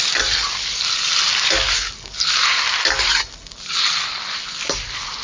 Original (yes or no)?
yes